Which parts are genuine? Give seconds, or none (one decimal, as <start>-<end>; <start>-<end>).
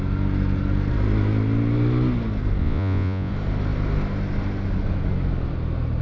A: 0.0-2.6; 3.3-6.0